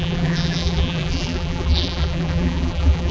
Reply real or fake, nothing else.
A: fake